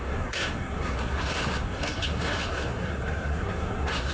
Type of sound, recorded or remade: remade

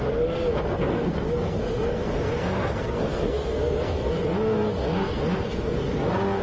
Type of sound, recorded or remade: remade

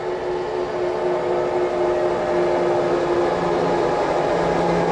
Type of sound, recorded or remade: recorded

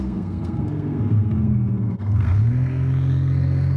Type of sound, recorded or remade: remade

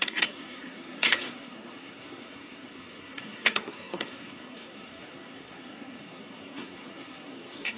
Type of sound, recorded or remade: remade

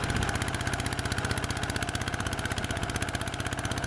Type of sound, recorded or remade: recorded